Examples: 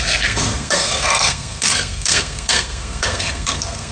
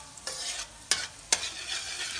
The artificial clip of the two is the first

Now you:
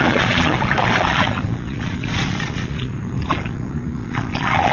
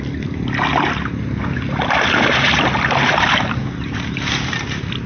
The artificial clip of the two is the first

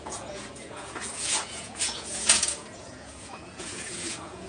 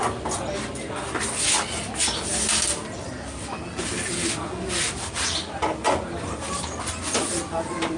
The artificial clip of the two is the first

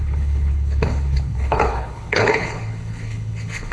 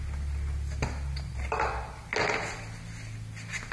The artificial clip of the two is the first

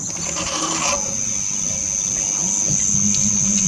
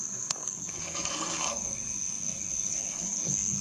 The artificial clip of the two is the second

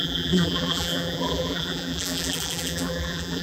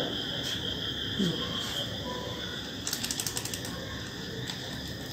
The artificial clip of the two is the first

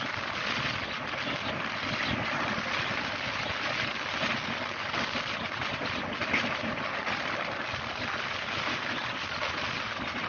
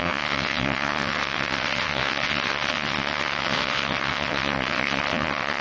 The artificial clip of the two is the second